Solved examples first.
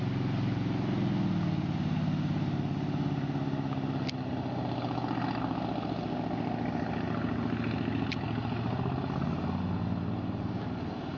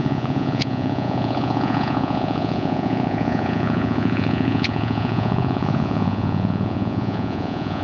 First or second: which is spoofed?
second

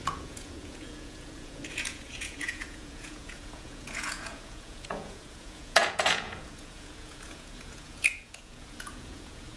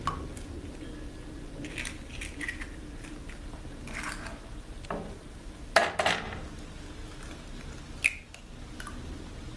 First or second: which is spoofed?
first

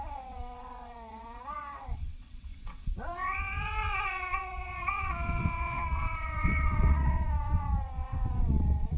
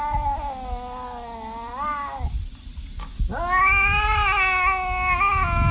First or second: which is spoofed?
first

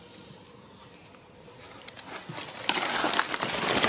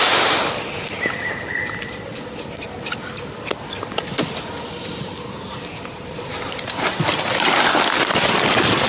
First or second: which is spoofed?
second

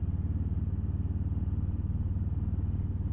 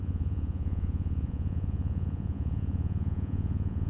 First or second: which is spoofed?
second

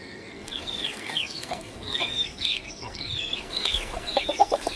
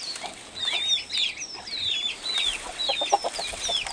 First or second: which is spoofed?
first